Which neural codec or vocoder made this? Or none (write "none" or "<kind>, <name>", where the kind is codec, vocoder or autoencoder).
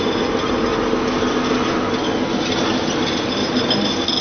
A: none